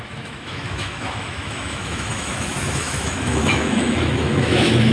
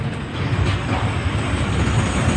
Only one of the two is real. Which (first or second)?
second